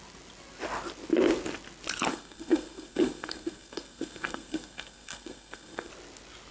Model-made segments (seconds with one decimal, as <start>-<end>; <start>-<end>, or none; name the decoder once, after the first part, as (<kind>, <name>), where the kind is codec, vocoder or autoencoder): 2.1-5.9 (codec, SNAC)